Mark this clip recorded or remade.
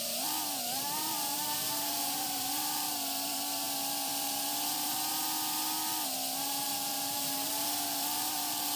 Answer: remade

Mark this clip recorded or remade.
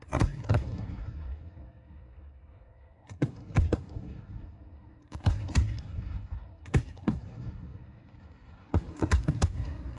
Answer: remade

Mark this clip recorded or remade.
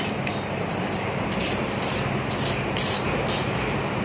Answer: recorded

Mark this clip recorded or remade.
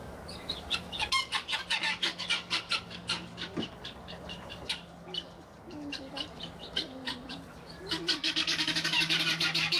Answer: remade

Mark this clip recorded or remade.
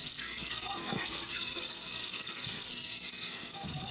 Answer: remade